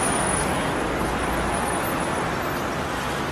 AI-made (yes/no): no